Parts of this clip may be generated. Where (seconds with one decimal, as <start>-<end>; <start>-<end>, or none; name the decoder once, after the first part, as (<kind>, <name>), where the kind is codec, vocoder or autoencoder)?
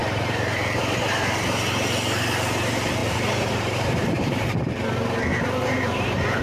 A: 0.0-1.1 (vocoder, BigVGAN v2); 3.0-4.7; 5.3-6.4